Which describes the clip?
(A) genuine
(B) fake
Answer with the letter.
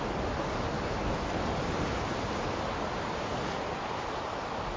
A